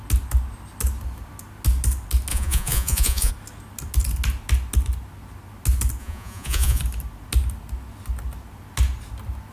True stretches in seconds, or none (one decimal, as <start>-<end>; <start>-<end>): 0.0-2.3; 3.3-6.0; 6.8-9.5